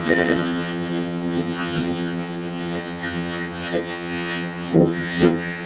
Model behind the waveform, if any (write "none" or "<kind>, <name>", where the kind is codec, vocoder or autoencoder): vocoder, HiFi-GAN